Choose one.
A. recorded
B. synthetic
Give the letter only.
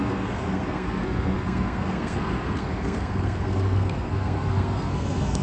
B